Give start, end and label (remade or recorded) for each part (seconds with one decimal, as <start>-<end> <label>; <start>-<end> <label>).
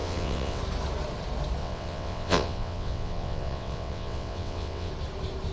0.0-0.6 remade; 0.6-1.6 recorded; 1.6-4.9 remade; 4.9-5.5 recorded